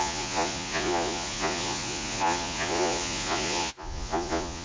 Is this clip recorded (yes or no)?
no